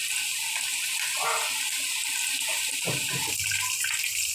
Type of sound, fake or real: real